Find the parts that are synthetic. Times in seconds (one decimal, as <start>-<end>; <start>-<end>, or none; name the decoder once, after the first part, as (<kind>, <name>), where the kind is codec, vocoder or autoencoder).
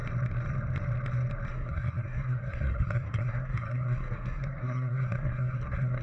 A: 1.5-6.0 (codec, SNAC)